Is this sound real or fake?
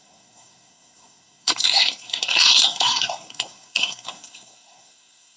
fake